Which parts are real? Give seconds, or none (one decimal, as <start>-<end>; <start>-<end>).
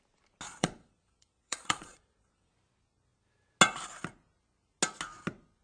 0.0-0.5; 2.5-5.6